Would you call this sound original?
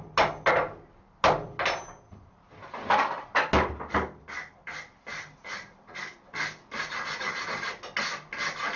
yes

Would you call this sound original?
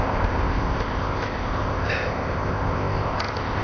no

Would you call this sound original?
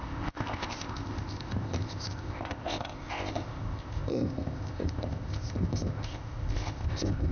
no